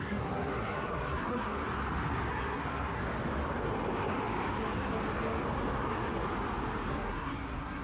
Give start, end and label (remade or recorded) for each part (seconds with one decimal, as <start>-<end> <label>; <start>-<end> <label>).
0.0-1.6 remade; 1.6-2.3 recorded; 2.3-3.0 remade; 3.0-6.9 recorded; 6.9-7.8 remade